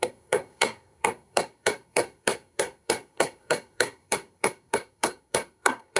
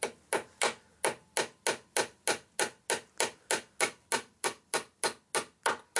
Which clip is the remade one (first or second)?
first